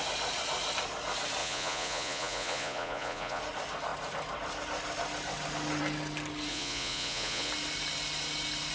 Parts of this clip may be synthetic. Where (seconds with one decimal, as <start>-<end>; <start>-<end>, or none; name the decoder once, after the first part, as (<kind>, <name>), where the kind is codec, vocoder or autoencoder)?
1.4-3.4 (vocoder, Vocos); 6.5-7.5